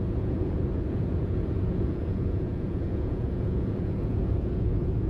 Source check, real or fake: fake